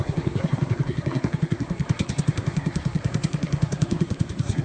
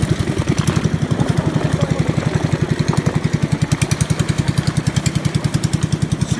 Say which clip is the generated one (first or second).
first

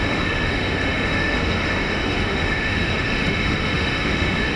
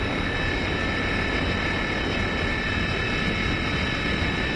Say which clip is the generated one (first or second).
first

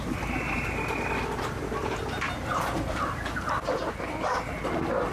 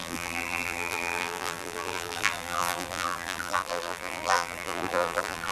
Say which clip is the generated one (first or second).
second